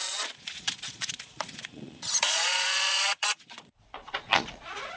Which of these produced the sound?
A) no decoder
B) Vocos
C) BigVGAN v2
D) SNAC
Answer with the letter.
B